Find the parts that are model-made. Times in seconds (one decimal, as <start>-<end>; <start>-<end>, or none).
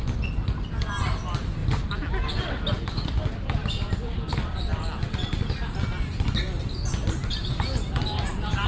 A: none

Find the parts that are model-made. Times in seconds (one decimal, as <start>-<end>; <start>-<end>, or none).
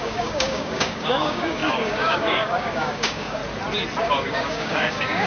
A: 0.0-3.4; 4.0-5.3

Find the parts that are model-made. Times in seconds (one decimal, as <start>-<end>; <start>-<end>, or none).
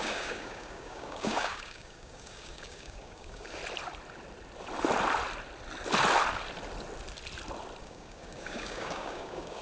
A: 0.0-3.6; 7.8-9.6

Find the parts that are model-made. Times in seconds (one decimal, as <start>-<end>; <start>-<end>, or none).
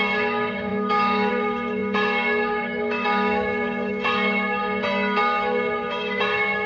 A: 0.0-4.6; 5.2-6.7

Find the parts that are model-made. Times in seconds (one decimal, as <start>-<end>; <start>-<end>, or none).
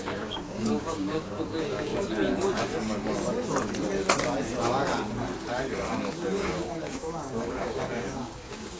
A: 0.0-1.9; 6.1-8.8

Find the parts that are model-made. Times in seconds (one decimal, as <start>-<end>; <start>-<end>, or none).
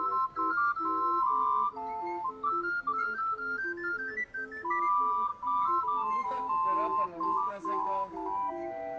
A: 5.3-9.0